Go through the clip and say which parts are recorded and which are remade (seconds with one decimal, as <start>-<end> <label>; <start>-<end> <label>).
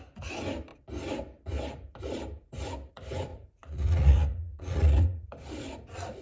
0.0-3.3 recorded; 3.3-5.3 remade; 5.3-6.2 recorded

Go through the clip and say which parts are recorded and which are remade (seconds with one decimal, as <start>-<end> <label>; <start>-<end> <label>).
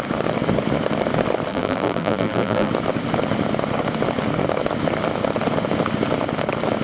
0.0-1.5 recorded; 1.5-2.7 remade; 2.7-6.8 recorded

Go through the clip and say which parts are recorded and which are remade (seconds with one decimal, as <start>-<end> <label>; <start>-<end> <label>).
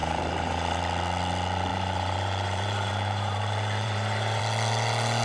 0.0-0.8 remade; 0.8-1.7 recorded; 1.7-4.4 remade; 4.4-5.2 recorded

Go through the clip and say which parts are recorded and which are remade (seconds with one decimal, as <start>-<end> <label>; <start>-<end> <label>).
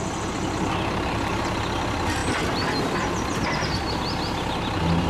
0.0-5.1 recorded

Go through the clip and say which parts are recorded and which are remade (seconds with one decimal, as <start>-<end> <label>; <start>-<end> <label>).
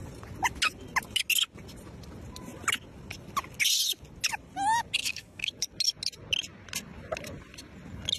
0.0-5.0 recorded; 5.0-5.5 remade; 5.5-8.2 recorded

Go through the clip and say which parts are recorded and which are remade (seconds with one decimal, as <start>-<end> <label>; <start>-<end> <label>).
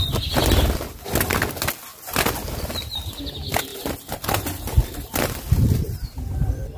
0.0-6.8 recorded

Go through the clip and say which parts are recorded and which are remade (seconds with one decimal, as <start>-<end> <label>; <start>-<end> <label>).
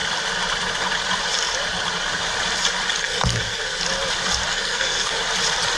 0.0-3.0 recorded; 3.0-3.8 remade; 3.8-4.5 recorded; 4.5-5.2 remade; 5.2-5.8 recorded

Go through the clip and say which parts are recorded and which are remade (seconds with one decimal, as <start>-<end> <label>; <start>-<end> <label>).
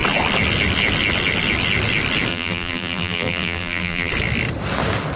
0.0-2.3 recorded; 2.3-4.1 remade; 4.1-5.2 recorded